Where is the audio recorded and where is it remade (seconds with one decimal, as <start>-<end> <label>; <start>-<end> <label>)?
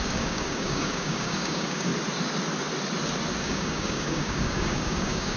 0.0-1.9 remade; 1.9-3.4 recorded; 3.4-5.4 remade